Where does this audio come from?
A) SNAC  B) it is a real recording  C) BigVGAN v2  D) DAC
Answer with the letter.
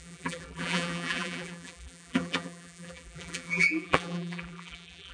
C